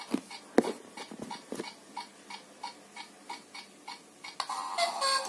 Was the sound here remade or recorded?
recorded